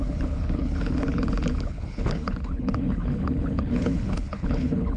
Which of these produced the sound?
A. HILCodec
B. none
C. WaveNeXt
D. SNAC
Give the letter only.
A